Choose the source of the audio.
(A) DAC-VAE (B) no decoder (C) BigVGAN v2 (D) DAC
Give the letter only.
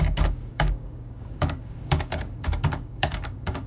D